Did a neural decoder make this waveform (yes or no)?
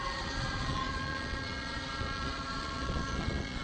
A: yes